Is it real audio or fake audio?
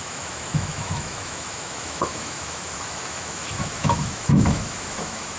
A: fake